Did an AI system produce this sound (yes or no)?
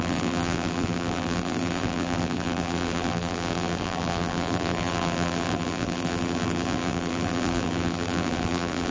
yes